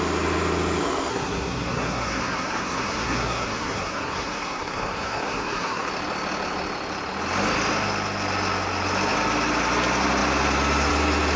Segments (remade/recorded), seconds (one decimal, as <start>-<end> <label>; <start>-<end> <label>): 0.0-1.1 recorded; 1.1-5.9 remade; 5.9-11.4 recorded